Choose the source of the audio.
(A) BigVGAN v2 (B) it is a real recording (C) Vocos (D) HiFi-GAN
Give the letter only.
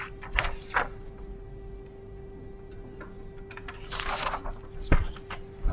B